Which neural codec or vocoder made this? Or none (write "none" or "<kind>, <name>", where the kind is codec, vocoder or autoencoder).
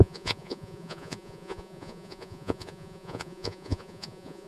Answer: vocoder, Vocos